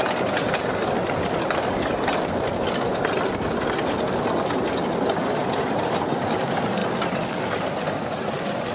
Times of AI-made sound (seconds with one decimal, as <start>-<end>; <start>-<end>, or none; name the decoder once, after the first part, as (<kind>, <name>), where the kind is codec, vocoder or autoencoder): none